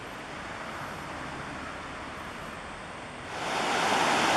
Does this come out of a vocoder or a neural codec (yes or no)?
no